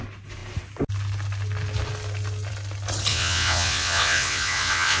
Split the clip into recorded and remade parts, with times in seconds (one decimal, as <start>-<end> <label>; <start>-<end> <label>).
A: 0.0-3.1 recorded; 3.1-5.0 remade